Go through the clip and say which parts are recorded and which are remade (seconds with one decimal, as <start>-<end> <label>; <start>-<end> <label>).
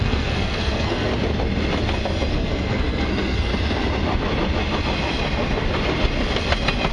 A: 0.0-1.1 remade; 1.1-2.3 recorded; 2.3-3.5 remade; 3.5-6.9 recorded